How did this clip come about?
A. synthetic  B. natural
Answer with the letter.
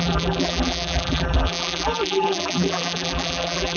A